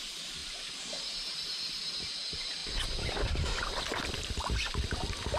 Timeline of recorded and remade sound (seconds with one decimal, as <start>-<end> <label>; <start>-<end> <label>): 0.0-5.4 recorded